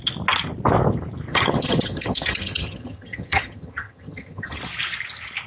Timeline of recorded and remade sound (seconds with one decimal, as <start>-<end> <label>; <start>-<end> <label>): 0.0-1.3 recorded; 1.3-4.6 remade; 4.6-5.5 recorded